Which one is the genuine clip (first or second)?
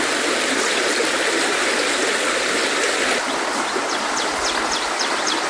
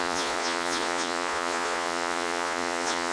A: first